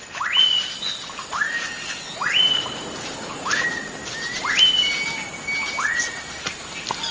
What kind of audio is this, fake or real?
real